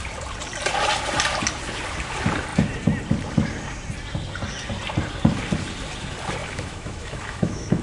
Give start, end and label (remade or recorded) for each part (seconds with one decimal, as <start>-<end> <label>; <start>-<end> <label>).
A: 0.0-6.4 recorded; 6.4-7.8 remade